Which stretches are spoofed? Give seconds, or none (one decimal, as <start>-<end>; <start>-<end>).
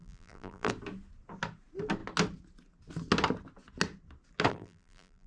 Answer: 0.0-0.7; 4.5-5.3